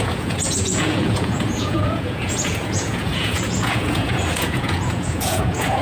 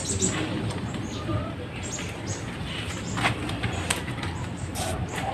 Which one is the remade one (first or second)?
first